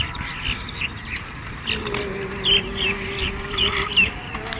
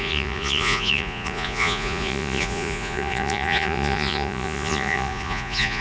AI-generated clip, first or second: second